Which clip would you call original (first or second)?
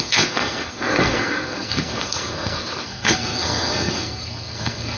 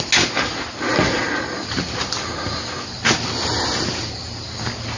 second